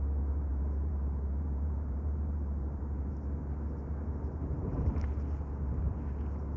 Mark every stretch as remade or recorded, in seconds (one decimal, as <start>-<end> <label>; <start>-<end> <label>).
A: 0.0-0.5 recorded; 0.5-3.1 remade; 3.1-4.4 recorded; 4.4-5.0 remade; 5.0-6.6 recorded